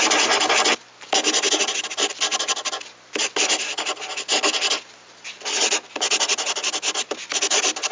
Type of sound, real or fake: real